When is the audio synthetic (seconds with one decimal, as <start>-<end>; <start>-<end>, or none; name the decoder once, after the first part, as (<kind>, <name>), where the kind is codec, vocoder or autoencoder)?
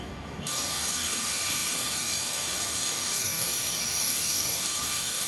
0.0-5.3 (codec, DAC)